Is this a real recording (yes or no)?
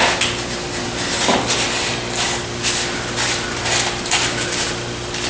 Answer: yes